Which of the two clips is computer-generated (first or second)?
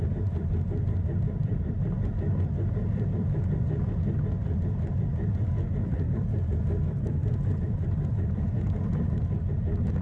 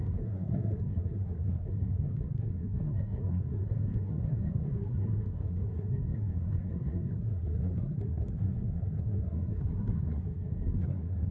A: second